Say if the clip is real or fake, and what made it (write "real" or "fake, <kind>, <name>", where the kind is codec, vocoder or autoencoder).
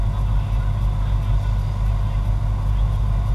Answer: real